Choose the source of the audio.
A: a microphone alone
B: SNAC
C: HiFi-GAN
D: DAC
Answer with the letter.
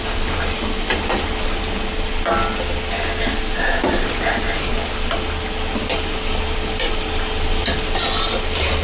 A